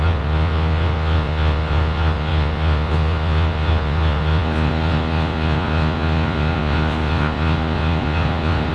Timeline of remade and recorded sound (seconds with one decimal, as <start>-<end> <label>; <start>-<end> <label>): 0.0-8.7 remade